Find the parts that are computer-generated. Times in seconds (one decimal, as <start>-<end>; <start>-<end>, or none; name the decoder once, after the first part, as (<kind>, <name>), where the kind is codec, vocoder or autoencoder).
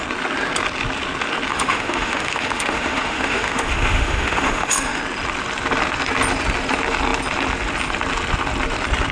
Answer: 1.5-5.0 (autoencoder, DAC-VAE)